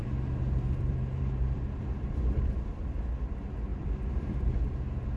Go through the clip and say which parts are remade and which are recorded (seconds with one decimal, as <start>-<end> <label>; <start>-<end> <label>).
0.0-2.8 remade; 2.8-3.7 recorded; 3.7-4.5 remade; 4.5-5.2 recorded